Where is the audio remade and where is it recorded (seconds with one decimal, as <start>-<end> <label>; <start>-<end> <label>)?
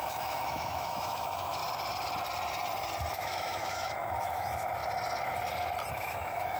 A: 0.0-1.6 remade; 1.6-3.1 recorded; 3.1-4.8 remade; 4.8-5.9 recorded; 5.9-6.6 remade